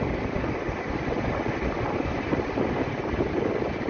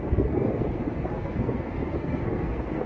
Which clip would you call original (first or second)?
first